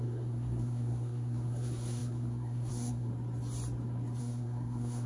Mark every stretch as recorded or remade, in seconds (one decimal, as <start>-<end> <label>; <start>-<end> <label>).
0.0-3.1 remade; 3.1-4.2 recorded; 4.2-5.1 remade